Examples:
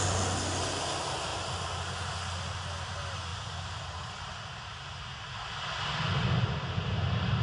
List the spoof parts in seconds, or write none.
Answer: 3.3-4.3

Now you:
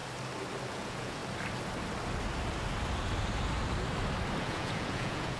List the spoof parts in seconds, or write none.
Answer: 0.7-1.2; 4.4-5.4

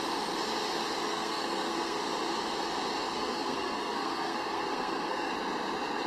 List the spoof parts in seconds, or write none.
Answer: 1.1-2.0; 3.1-5.3